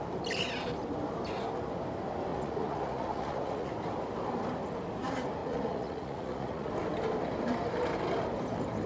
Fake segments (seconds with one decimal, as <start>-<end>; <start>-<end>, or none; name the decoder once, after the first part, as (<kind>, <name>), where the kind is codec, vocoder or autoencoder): 2.3-3.7 (vocoder, Vocos); 5.4-6.7